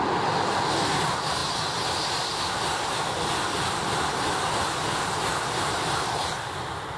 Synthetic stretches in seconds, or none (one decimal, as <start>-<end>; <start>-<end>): none